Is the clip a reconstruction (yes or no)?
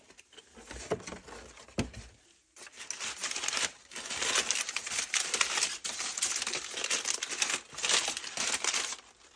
no